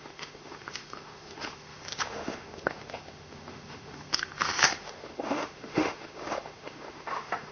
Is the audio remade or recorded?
remade